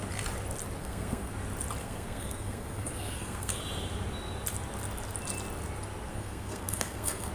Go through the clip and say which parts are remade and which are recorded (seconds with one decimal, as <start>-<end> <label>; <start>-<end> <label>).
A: 0.0-0.8 recorded; 0.8-1.3 remade; 1.3-1.8 recorded; 1.8-3.6 remade; 3.6-6.1 recorded; 6.1-7.3 remade